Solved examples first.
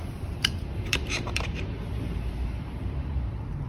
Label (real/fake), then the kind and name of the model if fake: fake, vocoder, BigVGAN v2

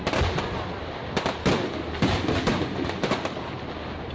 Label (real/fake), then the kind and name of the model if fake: real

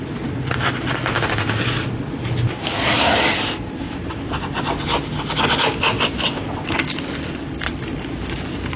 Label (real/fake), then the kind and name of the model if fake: real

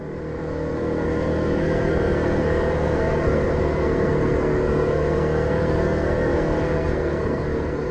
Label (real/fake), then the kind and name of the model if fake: fake, codec, SNAC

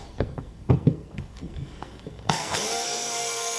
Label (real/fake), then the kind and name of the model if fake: fake, codec, SNAC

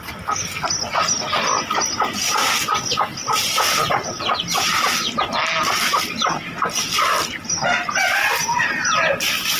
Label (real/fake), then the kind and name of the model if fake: real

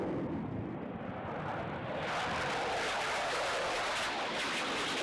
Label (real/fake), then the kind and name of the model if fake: real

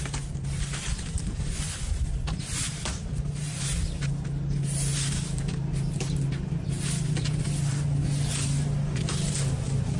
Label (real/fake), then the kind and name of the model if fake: real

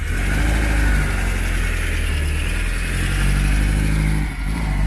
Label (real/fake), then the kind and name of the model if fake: real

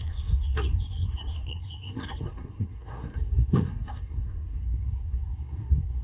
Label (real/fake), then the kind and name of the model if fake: fake, codec, SNAC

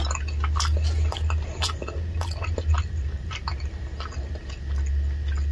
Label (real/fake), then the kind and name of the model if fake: real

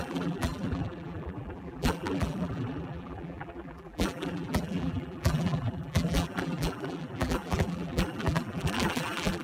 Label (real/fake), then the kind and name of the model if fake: fake, vocoder, BigVGAN v2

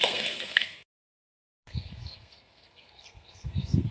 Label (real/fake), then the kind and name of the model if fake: fake, codec, SNAC